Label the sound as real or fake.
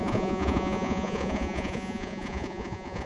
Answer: fake